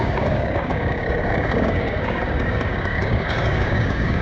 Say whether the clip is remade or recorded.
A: remade